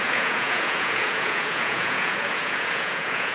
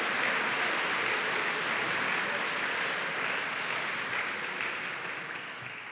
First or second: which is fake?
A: first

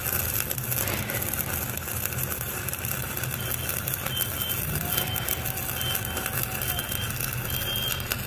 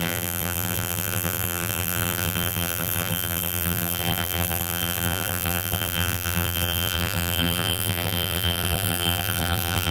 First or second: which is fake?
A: second